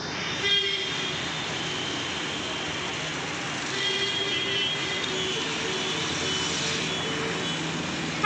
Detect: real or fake real